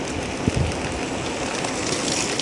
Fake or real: real